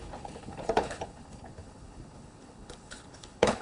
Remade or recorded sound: remade